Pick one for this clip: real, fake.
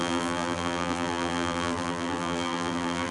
fake